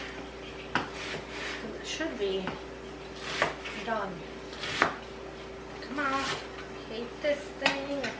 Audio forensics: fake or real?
real